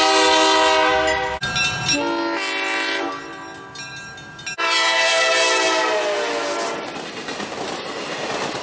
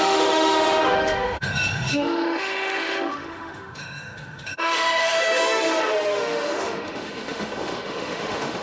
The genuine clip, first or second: first